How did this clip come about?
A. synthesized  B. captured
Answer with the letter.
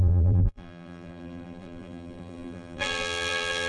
A